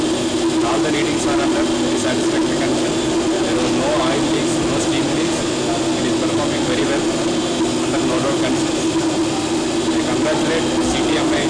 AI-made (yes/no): no